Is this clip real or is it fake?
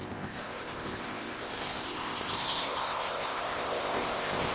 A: fake